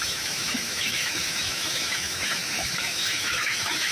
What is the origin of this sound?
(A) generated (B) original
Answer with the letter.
A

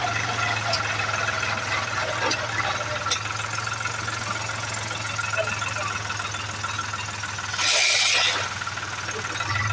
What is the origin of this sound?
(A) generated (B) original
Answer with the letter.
B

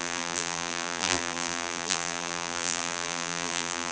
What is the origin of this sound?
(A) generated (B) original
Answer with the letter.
A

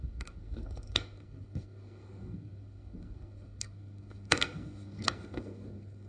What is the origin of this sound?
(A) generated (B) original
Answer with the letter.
A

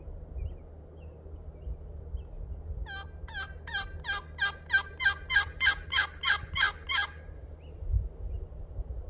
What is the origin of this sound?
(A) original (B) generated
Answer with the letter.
A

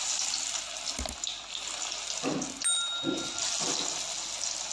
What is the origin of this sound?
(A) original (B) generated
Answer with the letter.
A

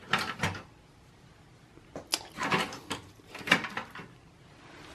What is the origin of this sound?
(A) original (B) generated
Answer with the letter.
A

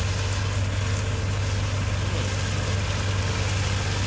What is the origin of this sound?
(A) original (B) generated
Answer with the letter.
A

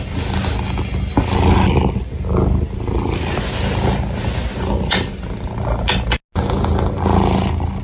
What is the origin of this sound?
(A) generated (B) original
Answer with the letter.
B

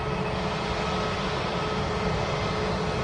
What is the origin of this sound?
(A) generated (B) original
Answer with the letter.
B